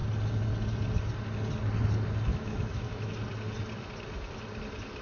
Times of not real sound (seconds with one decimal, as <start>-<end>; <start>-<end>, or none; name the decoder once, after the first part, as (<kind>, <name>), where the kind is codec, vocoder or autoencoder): 2.3-3.1 (autoencoder, DAC-VAE)